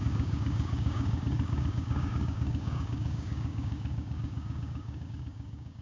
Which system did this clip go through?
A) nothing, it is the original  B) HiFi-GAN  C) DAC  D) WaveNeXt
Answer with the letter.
C